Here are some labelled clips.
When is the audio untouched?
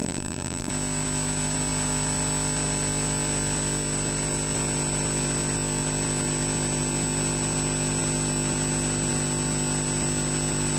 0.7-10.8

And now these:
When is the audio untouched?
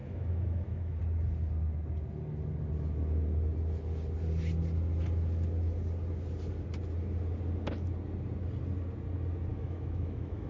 1.0-9.5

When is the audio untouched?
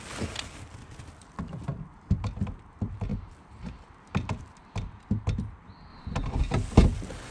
0.0-3.1; 3.7-5.9; 6.4-7.3